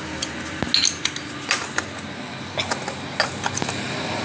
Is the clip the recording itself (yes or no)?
yes